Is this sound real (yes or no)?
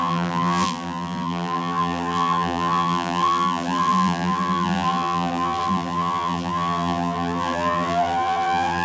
no